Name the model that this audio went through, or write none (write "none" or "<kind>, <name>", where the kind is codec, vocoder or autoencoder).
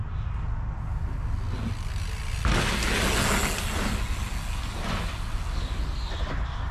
none